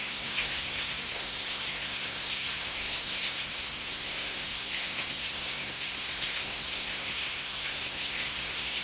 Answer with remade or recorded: remade